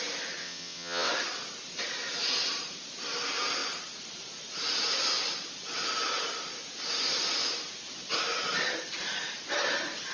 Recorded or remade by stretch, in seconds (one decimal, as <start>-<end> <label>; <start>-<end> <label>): 0.0-0.4 recorded; 0.4-1.1 remade; 1.1-10.1 recorded